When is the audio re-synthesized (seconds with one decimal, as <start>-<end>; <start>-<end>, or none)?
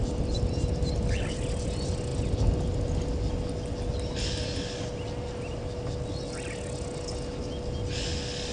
none